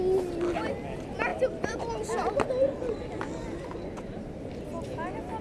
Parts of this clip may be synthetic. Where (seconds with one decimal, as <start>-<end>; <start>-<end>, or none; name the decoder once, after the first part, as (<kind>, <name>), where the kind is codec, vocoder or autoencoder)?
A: none